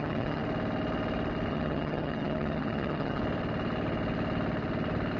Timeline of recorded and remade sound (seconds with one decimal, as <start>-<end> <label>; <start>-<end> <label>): 0.0-0.4 remade; 0.4-1.5 recorded; 1.5-3.2 remade; 3.2-5.2 recorded